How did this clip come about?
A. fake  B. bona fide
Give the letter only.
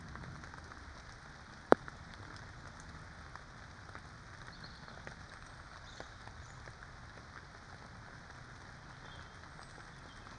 B